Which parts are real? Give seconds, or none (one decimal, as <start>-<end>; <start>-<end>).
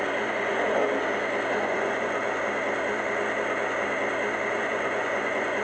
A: 0.8-1.5; 2.2-4.5